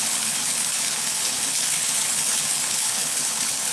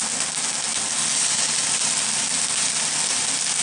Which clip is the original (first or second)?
second